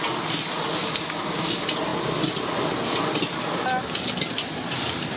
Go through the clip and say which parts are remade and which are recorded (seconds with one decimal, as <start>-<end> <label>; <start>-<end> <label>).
0.0-5.2 recorded